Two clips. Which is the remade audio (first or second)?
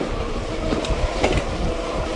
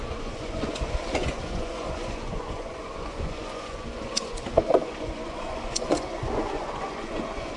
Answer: second